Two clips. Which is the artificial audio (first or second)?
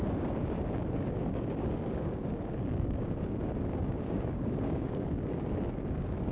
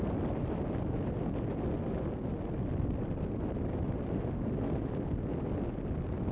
first